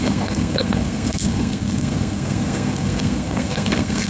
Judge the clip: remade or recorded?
remade